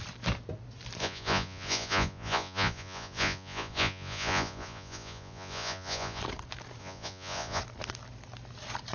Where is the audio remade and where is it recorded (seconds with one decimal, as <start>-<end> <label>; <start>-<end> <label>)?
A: 0.0-1.0 recorded; 1.0-6.2 remade; 6.2-6.8 recorded; 6.8-7.6 remade; 7.6-8.9 recorded